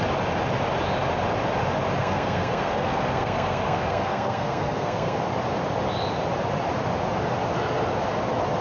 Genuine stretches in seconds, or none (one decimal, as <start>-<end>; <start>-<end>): 0.0-2.0; 5.2-8.6